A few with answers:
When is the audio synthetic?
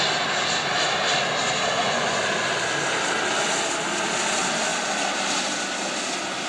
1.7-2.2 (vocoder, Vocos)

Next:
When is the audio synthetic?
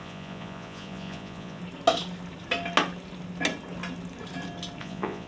0.0-1.6 (vocoder, Vocos); 4.8-5.3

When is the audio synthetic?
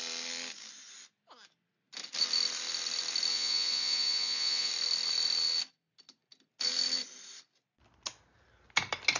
3.3-4.7 (vocoder, Vocos)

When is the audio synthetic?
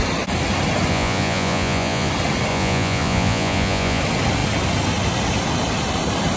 0.9-2.1 (vocoder, Vocos); 2.5-4.0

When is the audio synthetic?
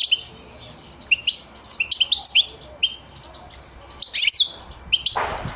none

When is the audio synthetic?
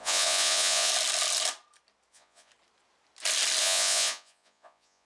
0.0-0.9 (vocoder, Vocos); 2.1-2.5; 3.6-5.1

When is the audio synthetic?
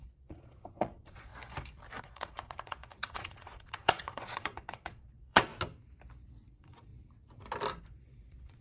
0.0-1.3 (vocoder, Vocos); 2.0-5.5; 6.5-6.9; 7.8-8.6